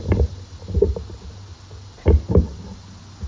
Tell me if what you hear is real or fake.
real